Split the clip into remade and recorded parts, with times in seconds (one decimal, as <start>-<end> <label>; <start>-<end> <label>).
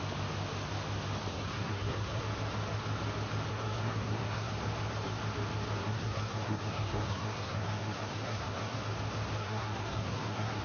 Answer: 0.0-1.3 recorded; 1.3-2.2 remade; 2.2-3.5 recorded; 3.5-4.5 remade; 4.5-5.8 recorded; 5.8-8.8 remade; 8.8-9.4 recorded; 9.4-10.6 remade